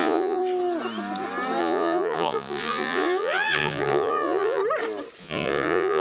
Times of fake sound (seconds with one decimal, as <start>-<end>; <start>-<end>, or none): 0.0-0.4; 1.6-4.6; 5.2-6.0